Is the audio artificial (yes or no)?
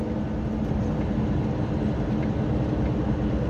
no